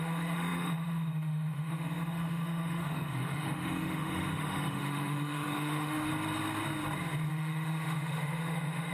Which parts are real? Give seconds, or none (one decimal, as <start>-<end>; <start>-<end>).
6.1-7.3